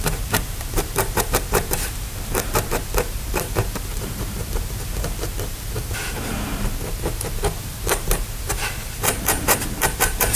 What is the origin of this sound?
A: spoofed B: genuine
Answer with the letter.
A